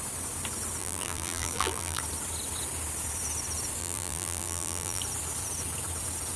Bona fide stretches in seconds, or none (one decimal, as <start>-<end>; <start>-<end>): 0.0-0.8; 2.0-3.8; 5.0-6.4